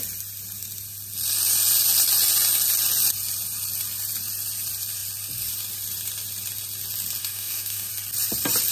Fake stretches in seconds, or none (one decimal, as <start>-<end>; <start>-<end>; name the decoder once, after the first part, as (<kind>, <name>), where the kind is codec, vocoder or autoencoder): 7.2-7.9 (codec, DAC)